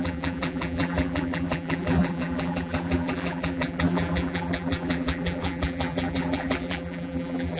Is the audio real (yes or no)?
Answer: no